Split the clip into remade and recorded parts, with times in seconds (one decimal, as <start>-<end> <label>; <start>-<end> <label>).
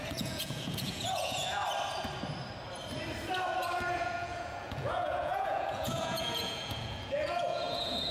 0.0-1.6 remade; 1.6-3.9 recorded; 3.9-8.1 remade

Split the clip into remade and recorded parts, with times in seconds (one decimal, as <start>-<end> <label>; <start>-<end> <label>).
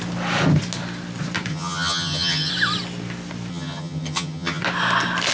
0.0-1.5 recorded; 1.5-2.5 remade; 2.5-3.5 recorded; 3.5-4.6 remade; 4.6-5.3 recorded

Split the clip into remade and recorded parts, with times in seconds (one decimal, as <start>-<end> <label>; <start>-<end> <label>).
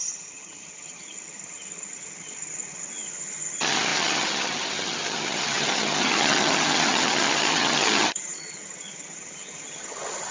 0.0-10.3 remade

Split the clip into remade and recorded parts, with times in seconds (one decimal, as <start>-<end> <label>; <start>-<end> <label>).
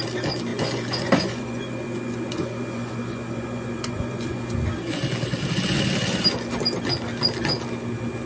0.0-0.5 recorded; 0.5-4.4 remade; 4.4-8.3 recorded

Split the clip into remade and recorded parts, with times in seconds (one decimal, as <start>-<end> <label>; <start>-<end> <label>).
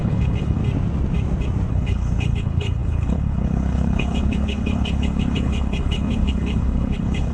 0.0-0.6 remade; 0.6-1.7 recorded; 1.7-7.3 remade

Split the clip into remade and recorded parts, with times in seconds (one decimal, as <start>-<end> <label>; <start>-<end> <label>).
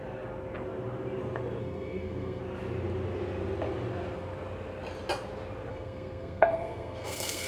0.0-1.6 recorded; 1.6-2.4 remade; 2.4-5.7 recorded; 5.7-7.5 remade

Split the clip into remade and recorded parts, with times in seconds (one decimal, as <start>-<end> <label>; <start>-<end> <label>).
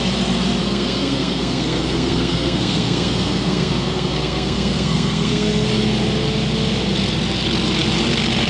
0.0-0.6 recorded; 0.6-5.7 remade; 5.7-8.5 recorded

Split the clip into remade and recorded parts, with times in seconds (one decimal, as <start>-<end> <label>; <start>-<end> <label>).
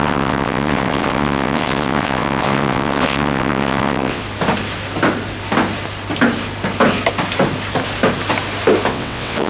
0.0-4.2 remade; 4.2-8.9 recorded; 8.9-9.5 remade